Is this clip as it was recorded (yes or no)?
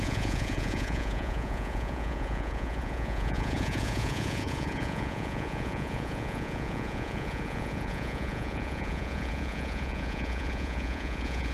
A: no